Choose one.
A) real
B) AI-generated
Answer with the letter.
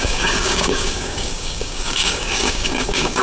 B